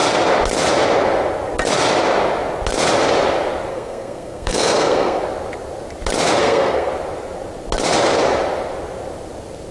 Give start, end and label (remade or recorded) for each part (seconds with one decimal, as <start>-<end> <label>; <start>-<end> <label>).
0.0-3.7 recorded; 3.7-5.2 remade; 5.2-6.4 recorded; 6.4-6.9 remade; 6.9-9.7 recorded